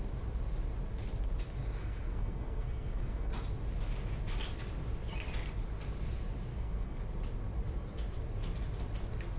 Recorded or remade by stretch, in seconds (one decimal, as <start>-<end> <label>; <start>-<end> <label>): 0.0-1.8 recorded; 1.8-3.3 remade; 3.3-6.5 recorded; 6.5-7.0 remade; 7.0-9.4 recorded

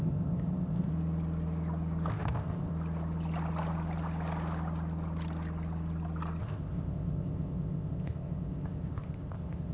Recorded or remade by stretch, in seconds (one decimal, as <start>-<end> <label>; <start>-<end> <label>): 0.0-0.9 remade; 0.9-2.1 recorded; 2.1-2.7 remade; 2.7-6.4 recorded; 6.4-9.7 remade

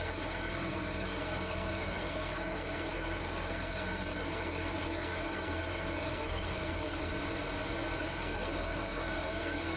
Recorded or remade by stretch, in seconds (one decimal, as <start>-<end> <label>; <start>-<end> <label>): 0.0-7.1 remade; 7.1-8.0 recorded; 8.0-9.8 remade

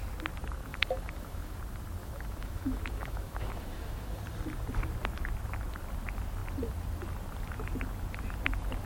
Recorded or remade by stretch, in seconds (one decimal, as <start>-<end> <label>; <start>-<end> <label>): 0.0-0.7 recorded; 0.7-1.6 remade; 1.6-2.0 recorded; 2.0-4.2 remade; 4.2-8.9 recorded

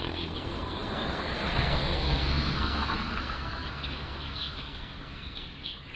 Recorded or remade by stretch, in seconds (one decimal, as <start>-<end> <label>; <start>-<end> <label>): 0.0-6.0 remade

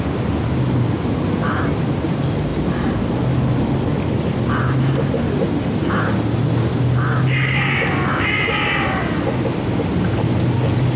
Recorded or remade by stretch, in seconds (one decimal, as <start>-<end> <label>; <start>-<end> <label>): 0.0-11.0 recorded

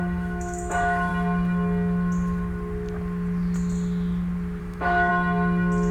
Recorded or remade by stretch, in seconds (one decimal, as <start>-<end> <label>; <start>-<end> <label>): 0.0-1.1 remade; 1.1-4.6 recorded; 4.6-5.1 remade; 5.1-5.9 recorded

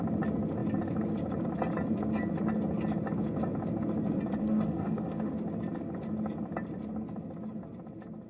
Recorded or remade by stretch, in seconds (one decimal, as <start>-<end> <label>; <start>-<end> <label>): 0.0-4.4 recorded; 4.4-5.3 remade; 5.3-8.3 recorded